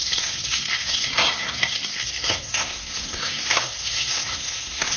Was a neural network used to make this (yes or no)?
yes